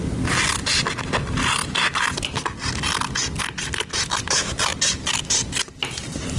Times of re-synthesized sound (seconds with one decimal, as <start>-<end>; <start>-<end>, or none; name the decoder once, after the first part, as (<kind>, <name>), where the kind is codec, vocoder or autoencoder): none